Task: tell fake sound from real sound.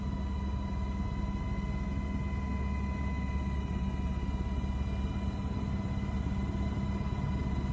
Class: real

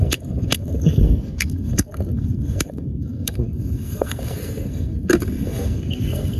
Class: fake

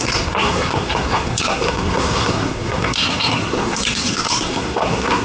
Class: fake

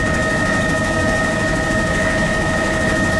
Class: fake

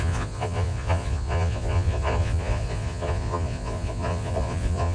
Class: fake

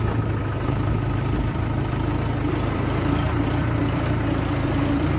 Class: fake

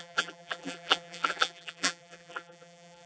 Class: fake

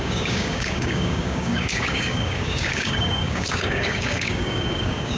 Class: fake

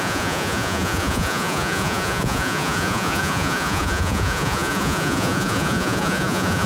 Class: fake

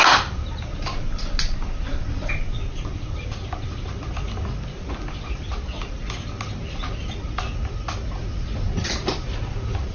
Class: real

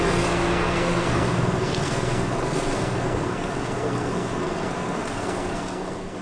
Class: fake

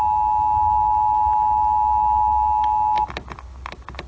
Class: real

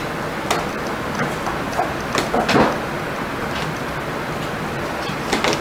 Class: real